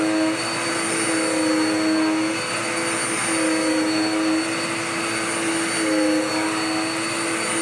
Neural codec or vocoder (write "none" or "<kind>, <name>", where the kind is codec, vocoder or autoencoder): none